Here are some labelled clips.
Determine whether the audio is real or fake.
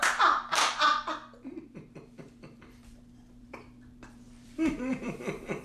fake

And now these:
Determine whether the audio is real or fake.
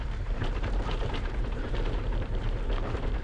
fake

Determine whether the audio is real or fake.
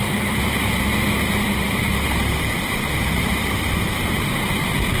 fake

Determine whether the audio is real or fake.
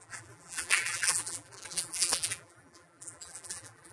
fake